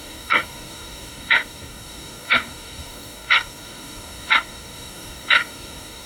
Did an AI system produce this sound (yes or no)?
yes